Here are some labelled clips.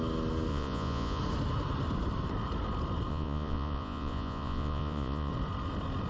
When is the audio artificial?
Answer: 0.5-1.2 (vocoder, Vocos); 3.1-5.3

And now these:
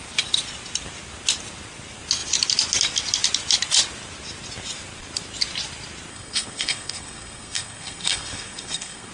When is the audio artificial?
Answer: 6.1-9.1 (codec, SNAC)